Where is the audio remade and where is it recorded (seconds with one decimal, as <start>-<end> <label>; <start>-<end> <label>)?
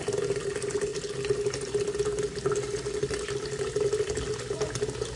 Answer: 0.0-5.2 recorded